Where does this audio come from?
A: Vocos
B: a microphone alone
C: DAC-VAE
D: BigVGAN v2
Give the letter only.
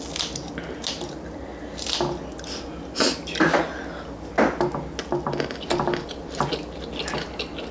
B